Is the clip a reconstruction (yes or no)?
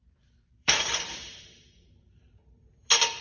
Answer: yes